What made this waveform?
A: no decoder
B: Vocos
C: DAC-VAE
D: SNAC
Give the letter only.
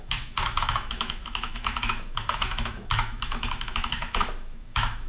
C